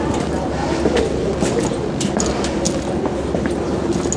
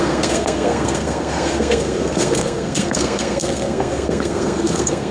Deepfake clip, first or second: second